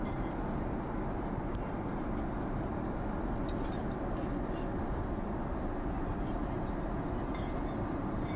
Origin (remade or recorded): recorded